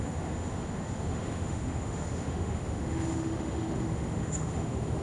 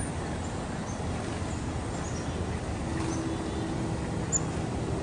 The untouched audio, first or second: second